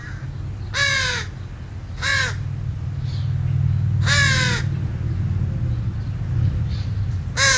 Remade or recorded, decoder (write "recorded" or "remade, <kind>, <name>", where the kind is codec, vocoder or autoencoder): recorded